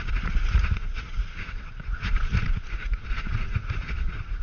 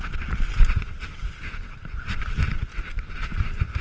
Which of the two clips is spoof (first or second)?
first